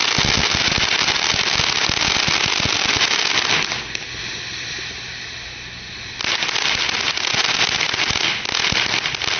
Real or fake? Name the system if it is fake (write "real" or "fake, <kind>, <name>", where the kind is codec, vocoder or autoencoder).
real